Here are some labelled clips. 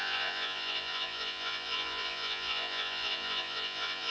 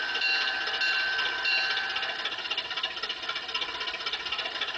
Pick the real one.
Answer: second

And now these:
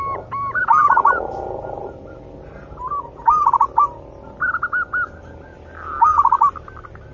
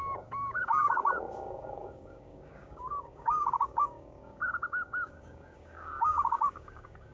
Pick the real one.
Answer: first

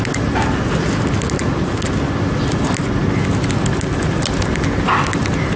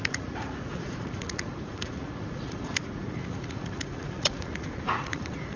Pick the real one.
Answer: first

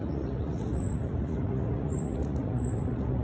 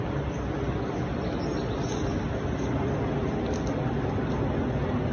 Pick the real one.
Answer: second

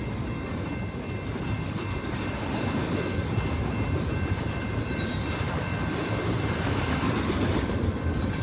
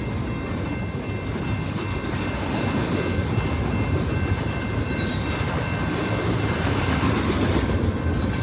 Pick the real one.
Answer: second